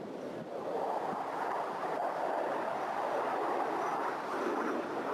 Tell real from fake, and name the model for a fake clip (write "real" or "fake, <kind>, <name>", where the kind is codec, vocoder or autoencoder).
real